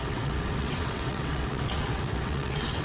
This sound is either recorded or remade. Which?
remade